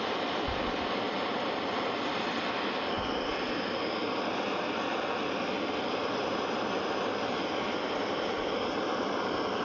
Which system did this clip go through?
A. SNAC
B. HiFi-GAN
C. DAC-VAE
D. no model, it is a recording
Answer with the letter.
D